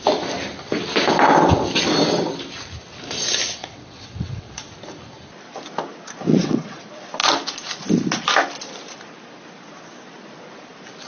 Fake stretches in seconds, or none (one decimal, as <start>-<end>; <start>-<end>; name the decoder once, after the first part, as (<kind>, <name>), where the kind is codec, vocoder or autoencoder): 3.6-4.7 (vocoder, WaveNeXt); 6.3-6.8

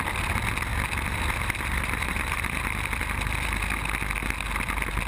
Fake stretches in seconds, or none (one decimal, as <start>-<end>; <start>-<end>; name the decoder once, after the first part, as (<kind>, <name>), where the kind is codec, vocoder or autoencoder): 0.7-3.6 (vocoder, BigVGAN v2)

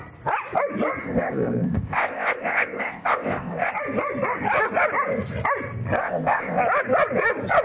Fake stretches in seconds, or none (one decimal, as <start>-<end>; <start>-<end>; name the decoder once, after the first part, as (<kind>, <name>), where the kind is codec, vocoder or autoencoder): 1.0-3.7 (codec, ZipCodec); 6.0-6.6

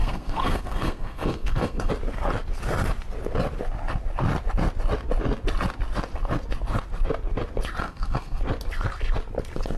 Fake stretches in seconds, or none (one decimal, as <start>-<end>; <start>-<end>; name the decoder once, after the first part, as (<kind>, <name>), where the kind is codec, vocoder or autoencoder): 0.0-1.9 (codec, SNAC); 7.8-8.4

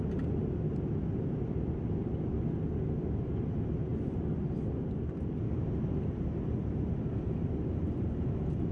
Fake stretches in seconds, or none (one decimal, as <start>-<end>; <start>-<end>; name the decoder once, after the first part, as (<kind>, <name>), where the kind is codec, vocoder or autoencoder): none

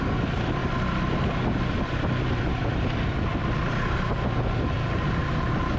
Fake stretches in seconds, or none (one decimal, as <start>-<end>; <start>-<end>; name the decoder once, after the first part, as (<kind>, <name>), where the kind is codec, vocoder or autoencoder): none

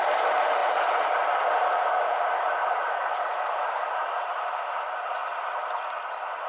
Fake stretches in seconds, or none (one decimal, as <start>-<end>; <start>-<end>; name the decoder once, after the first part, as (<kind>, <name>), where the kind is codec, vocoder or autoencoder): none